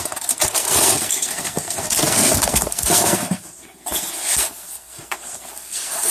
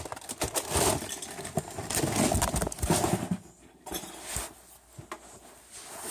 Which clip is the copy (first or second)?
first